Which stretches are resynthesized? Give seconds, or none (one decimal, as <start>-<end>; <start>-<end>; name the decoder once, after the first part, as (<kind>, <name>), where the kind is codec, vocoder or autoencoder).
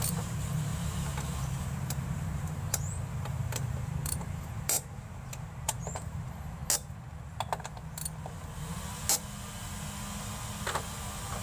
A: 0.0-6.6 (vocoder, BigVGAN v2)